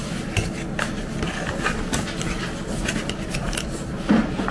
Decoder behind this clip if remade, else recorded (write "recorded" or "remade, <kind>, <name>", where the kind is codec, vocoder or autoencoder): recorded